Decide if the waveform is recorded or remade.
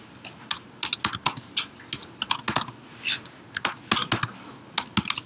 recorded